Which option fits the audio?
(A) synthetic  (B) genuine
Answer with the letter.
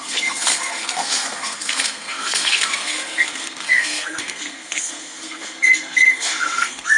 A